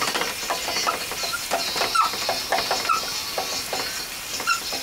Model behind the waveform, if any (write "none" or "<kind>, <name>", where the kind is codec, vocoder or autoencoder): none